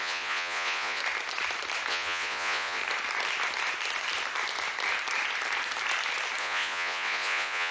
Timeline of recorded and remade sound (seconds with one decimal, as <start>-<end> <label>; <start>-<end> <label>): 0.0-1.0 remade; 1.0-1.9 recorded; 1.9-2.8 remade; 2.8-6.4 recorded; 6.4-7.7 remade